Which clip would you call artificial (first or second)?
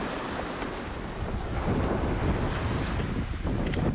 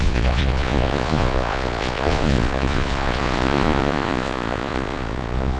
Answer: second